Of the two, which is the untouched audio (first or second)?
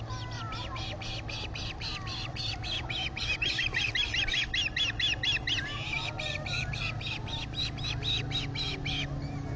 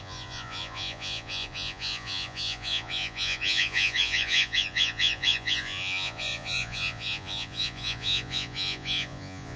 first